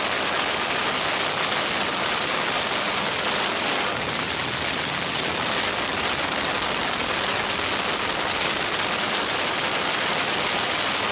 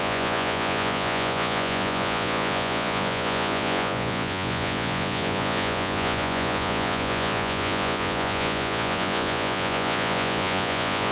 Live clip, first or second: first